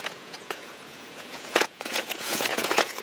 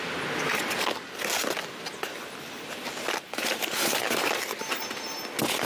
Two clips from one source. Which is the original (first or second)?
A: second